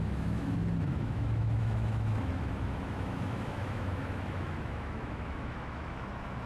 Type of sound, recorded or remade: remade